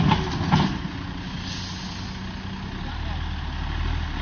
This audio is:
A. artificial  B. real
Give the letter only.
B